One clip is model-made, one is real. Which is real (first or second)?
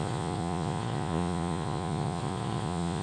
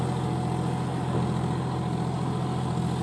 second